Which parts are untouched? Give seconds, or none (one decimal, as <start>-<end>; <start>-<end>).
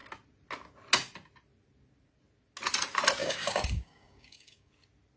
0.0-3.2; 4.7-5.2